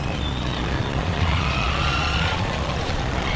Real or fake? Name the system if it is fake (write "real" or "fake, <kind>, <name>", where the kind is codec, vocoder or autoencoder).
fake, vocoder, Vocos